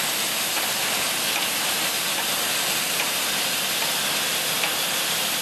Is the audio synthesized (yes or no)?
yes